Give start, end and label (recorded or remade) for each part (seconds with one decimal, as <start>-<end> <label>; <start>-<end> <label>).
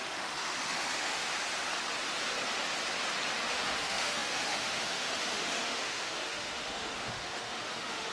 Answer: 0.0-1.3 remade; 1.3-3.5 recorded; 3.5-8.1 remade